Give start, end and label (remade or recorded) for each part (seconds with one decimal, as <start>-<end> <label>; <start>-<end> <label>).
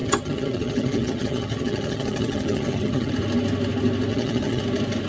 0.0-3.1 remade; 3.1-4.1 recorded; 4.1-4.6 remade; 4.6-5.1 recorded